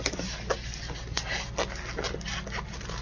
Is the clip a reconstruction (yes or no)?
no